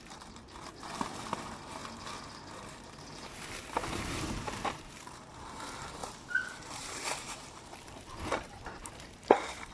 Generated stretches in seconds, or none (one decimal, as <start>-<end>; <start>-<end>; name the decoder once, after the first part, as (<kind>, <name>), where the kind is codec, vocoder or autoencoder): 0.0-1.8 (vocoder, BigVGAN v2); 2.6-9.7